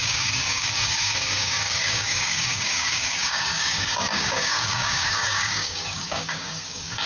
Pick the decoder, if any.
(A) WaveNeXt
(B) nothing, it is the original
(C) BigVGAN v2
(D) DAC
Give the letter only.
D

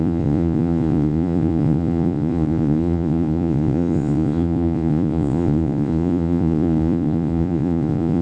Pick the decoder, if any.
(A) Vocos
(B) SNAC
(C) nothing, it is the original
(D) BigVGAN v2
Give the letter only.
A